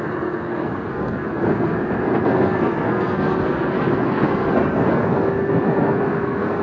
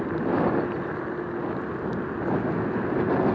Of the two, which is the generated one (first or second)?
first